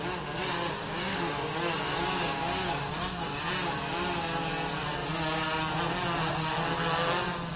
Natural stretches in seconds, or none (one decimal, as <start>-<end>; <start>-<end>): 0.0-0.8; 3.5-7.6